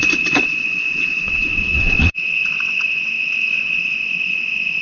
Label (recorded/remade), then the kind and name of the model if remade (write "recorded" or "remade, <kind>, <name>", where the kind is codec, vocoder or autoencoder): remade, vocoder, WaveNeXt